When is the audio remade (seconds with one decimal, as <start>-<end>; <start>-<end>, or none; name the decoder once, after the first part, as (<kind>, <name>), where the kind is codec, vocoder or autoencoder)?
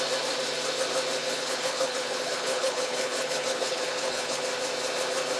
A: 1.2-4.4 (codec, HILCodec)